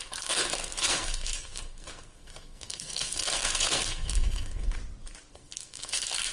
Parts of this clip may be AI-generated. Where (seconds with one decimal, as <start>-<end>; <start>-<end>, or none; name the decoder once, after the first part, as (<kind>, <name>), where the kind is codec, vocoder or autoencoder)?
0.0-4.8 (codec, SNAC); 5.3-6.3